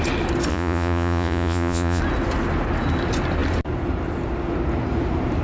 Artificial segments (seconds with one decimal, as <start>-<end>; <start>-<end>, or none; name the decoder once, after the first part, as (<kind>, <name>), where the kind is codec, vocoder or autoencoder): 0.5-2.0 (vocoder, Vocos)